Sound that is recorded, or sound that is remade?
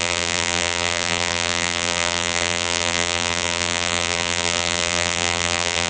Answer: remade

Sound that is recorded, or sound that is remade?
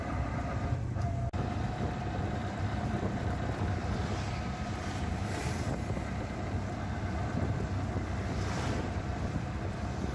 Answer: remade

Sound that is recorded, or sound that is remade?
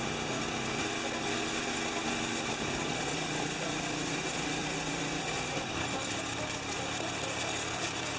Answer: recorded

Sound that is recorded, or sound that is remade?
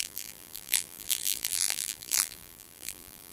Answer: remade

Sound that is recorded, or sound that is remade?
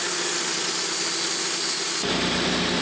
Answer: recorded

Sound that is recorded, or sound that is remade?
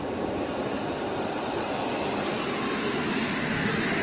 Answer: recorded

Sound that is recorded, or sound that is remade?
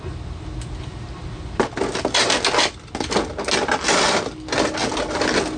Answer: recorded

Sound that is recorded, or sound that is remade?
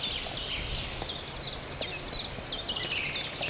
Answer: recorded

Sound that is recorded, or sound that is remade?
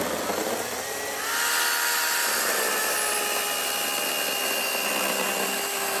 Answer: recorded